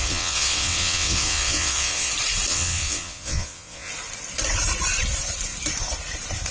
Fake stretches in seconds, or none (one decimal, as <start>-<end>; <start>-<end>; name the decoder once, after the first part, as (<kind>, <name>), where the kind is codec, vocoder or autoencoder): 0.0-2.1 (vocoder, WaveNeXt); 2.5-3.9